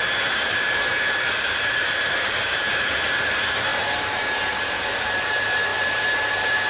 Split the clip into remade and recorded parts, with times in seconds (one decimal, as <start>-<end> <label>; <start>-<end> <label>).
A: 0.0-6.7 remade